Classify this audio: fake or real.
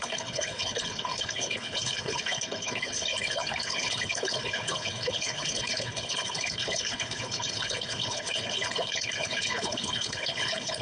fake